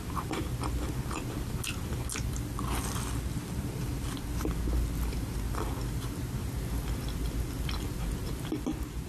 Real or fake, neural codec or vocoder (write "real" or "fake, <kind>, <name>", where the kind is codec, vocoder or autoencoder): real